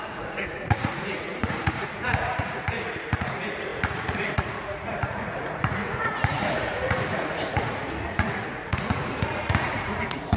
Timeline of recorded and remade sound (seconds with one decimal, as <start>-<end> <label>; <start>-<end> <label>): 0.0-10.4 remade